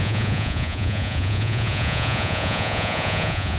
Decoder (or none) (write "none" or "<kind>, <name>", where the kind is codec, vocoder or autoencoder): vocoder, Vocos